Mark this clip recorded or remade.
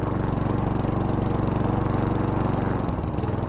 recorded